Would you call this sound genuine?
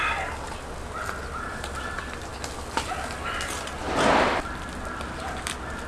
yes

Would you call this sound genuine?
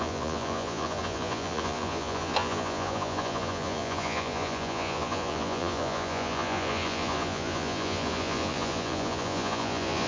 no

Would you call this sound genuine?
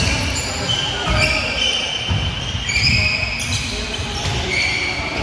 no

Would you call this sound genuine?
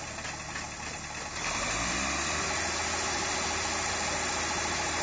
yes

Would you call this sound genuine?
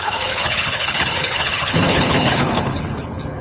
no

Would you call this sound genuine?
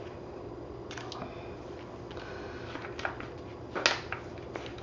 yes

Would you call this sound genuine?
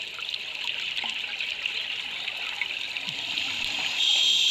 yes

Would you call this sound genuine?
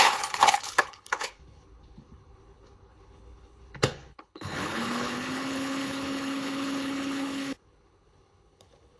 no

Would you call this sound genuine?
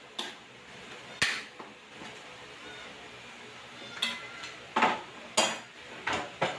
yes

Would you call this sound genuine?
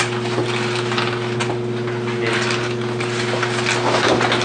yes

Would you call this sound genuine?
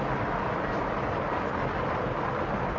yes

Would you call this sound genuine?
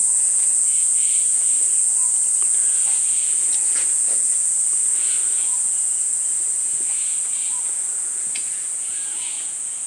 no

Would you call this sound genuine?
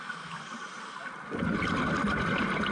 yes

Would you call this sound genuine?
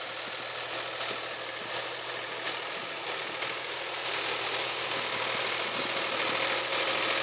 yes